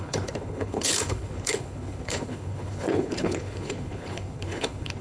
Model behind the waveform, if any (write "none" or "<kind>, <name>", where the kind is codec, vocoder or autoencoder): codec, HILCodec